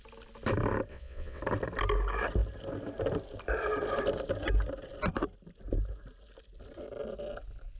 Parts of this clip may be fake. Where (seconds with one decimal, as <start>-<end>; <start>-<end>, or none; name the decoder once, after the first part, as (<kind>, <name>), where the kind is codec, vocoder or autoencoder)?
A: 0.9-1.4 (vocoder, WaveNeXt)